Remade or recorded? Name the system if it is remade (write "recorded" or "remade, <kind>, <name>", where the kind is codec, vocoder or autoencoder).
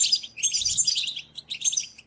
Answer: recorded